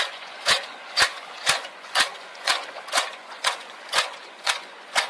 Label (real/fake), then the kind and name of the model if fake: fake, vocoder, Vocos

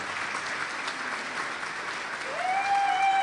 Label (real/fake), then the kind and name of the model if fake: real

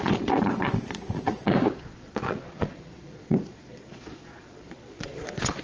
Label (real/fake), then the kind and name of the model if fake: fake, vocoder, Vocos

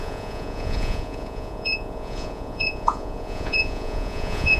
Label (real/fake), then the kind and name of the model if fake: fake, vocoder, Vocos